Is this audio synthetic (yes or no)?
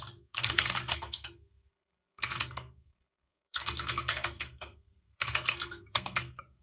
yes